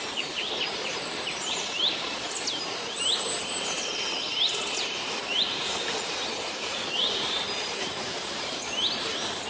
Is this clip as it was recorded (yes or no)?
no